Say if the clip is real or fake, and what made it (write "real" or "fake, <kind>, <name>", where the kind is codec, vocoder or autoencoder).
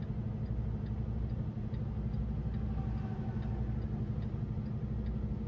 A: real